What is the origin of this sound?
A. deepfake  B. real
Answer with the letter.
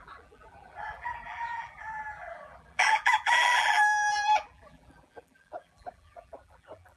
A